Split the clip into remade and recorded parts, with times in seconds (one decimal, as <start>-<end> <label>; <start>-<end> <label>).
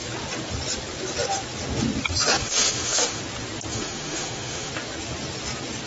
0.0-2.4 recorded; 2.4-3.2 remade; 3.2-3.7 recorded; 3.7-4.7 remade; 4.7-5.9 recorded